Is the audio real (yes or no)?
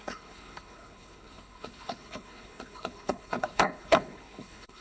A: no